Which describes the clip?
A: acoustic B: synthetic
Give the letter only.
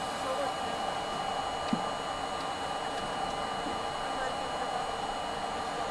A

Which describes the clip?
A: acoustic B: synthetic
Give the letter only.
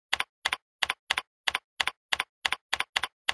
A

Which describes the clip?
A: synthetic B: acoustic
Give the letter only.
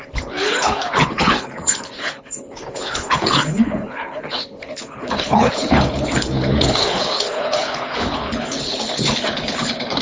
A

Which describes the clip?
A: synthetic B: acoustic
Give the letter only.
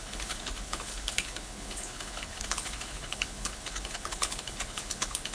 A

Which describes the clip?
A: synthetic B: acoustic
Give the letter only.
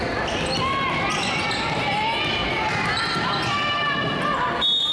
B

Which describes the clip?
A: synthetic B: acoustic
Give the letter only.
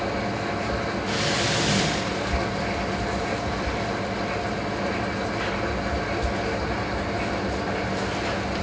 B